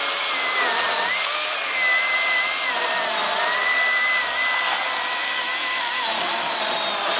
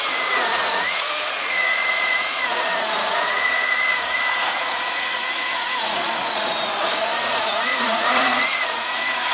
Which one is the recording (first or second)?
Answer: first